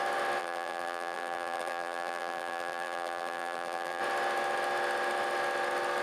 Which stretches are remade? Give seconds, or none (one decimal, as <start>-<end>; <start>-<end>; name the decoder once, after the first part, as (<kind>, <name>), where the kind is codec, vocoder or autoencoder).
0.4-4.0 (vocoder, BigVGAN v2)